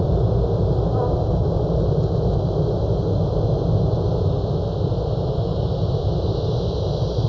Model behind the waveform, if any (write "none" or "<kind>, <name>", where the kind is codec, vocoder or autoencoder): none